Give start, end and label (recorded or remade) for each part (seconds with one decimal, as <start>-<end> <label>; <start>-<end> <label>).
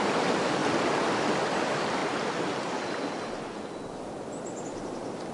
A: 0.0-5.3 recorded